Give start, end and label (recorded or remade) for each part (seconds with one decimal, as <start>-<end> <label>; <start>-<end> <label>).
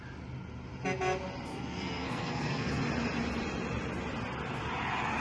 0.0-1.5 recorded; 1.5-2.8 remade; 2.8-5.2 recorded